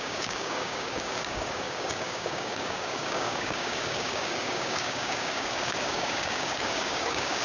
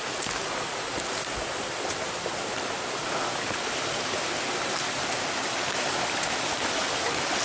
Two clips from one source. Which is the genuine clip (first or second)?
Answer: second